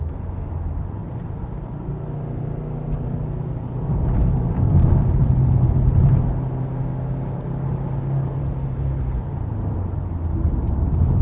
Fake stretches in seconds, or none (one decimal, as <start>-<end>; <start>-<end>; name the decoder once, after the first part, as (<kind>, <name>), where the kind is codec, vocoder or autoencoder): 4.2-4.9 (codec, DAC); 6.9-8.4